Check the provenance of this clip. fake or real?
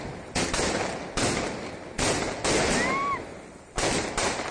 real